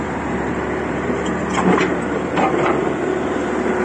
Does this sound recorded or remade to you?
remade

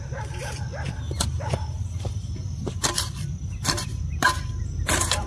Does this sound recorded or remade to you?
remade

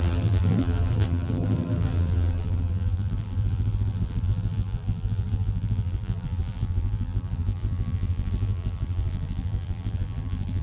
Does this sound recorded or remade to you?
remade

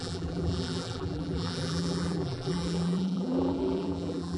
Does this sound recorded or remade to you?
remade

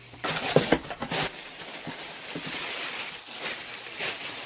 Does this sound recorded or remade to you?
recorded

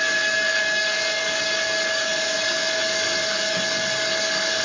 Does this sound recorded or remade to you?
remade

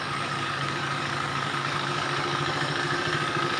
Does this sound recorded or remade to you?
remade